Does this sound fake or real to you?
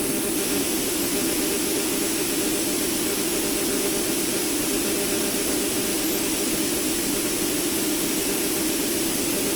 real